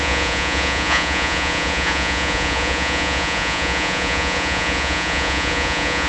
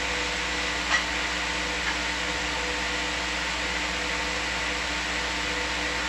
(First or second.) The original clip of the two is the second